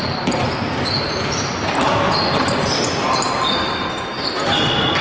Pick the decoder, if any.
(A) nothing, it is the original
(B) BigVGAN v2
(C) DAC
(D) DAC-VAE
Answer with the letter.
A